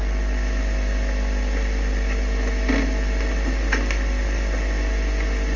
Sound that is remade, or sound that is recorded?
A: recorded